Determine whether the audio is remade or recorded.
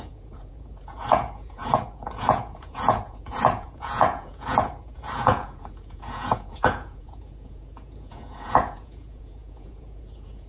remade